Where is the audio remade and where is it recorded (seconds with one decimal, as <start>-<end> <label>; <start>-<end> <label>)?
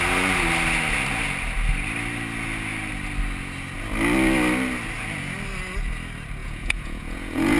0.0-6.4 recorded; 6.4-7.6 remade